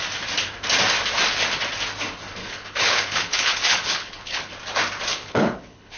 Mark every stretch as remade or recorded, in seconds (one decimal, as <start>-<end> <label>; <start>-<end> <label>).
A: 0.0-2.4 recorded; 2.4-4.5 remade; 4.5-5.1 recorded; 5.1-6.0 remade